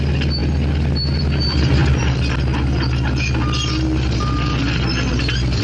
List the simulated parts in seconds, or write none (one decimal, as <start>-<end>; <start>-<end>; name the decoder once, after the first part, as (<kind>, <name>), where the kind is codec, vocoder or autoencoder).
none